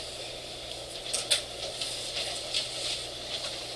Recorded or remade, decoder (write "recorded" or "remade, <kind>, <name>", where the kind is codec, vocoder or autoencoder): recorded